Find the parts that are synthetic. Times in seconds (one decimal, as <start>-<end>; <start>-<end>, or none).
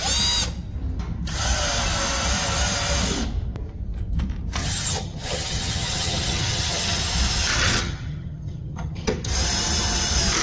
4.6-7.0; 7.5-9.3